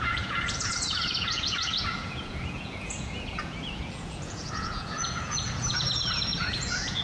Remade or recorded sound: remade